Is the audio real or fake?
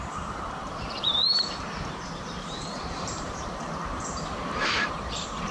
fake